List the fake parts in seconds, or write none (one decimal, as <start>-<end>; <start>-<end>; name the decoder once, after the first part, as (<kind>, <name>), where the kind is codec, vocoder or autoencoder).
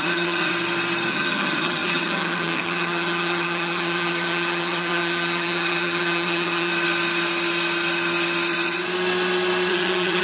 0.0-0.5 (vocoder, HiFi-GAN); 1.1-6.7; 9.7-10.2